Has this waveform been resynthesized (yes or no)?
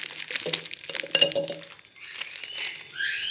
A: no